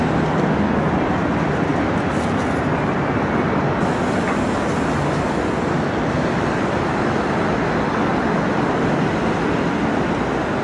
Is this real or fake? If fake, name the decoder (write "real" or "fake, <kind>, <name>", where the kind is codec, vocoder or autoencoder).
real